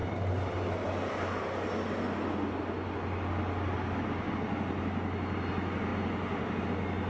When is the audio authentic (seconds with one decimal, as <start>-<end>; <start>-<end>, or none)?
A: 0.0-7.1